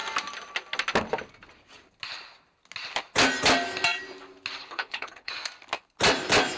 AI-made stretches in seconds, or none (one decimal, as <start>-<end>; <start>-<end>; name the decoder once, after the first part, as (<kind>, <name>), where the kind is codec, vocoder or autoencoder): 4.6-5.3 (codec, HILCodec)